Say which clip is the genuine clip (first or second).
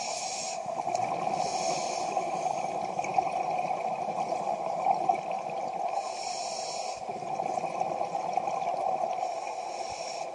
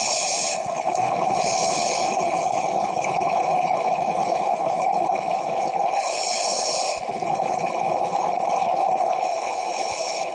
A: first